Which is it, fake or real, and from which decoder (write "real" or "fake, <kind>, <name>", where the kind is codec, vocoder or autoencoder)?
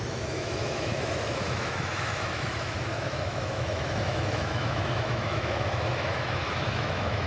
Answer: fake, autoencoder, DAC-VAE